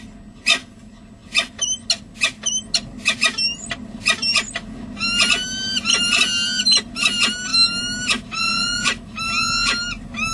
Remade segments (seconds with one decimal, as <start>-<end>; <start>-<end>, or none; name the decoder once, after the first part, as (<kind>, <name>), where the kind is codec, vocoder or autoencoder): none

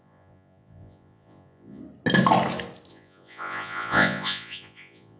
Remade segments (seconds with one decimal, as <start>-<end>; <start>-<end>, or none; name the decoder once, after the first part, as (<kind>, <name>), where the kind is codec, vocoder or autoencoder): 0.0-1.8 (vocoder, Vocos); 2.9-5.2

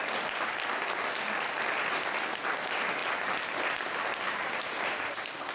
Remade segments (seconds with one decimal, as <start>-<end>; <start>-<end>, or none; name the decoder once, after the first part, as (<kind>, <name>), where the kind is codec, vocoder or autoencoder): none

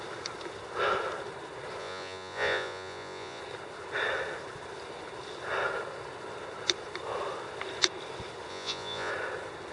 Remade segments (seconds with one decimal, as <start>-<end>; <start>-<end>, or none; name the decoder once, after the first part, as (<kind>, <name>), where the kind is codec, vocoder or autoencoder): 1.8-3.4 (vocoder, Vocos); 8.5-9.1

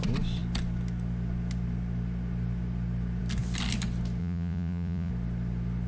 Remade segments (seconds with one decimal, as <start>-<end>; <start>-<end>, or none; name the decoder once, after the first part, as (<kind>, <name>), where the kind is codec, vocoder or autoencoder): 4.2-5.1 (vocoder, Vocos)

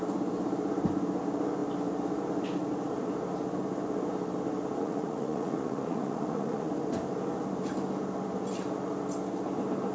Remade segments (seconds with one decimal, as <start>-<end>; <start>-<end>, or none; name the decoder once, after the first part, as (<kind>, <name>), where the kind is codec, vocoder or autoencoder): 4.8-6.7 (vocoder, Vocos)

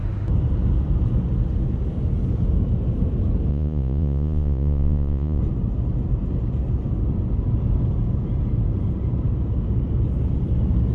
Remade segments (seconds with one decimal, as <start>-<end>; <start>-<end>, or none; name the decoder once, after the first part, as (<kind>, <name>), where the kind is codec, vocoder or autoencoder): 3.5-5.4 (vocoder, Vocos)

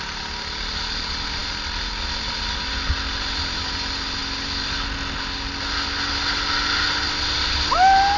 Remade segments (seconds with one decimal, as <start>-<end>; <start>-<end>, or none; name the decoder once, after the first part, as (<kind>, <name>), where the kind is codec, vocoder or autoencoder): none